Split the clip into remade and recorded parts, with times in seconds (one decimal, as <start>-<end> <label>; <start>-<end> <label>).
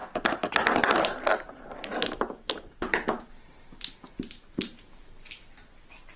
0.0-0.8 remade; 0.8-1.3 recorded; 1.3-3.2 remade; 3.2-6.2 recorded